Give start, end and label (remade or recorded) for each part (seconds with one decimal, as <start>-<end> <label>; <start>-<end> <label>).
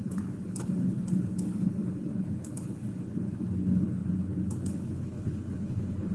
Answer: 0.0-6.1 remade